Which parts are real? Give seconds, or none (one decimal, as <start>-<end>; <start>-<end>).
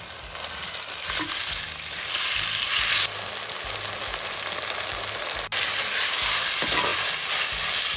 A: 0.0-8.0